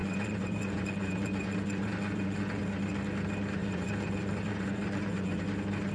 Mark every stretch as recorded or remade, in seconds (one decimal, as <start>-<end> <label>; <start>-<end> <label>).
0.0-2.6 remade; 2.6-3.6 recorded; 3.6-5.4 remade; 5.4-5.9 recorded